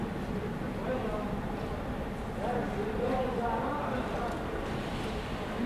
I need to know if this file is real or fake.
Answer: real